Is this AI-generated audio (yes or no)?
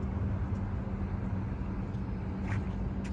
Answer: no